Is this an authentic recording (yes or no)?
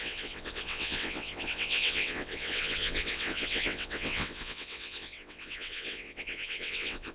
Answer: no